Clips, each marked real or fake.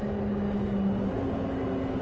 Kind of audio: real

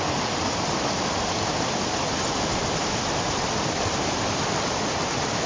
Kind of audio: real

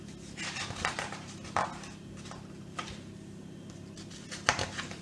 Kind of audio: real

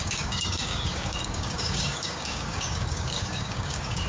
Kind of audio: fake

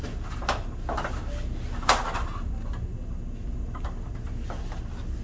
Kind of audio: real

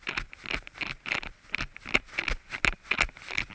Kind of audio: real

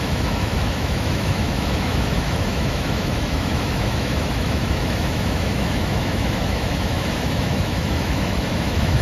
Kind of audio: fake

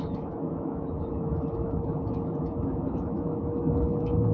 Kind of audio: fake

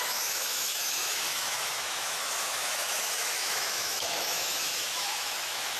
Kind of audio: fake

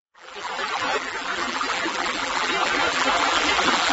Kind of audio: fake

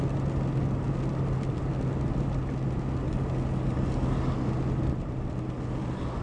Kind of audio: real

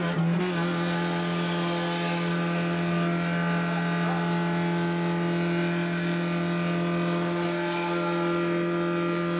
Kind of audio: real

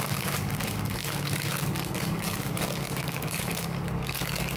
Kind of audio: fake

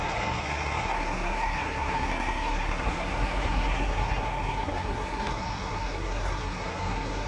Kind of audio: fake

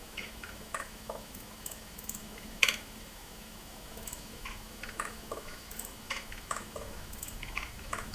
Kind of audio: fake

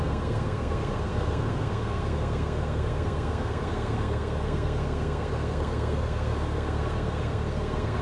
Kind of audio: fake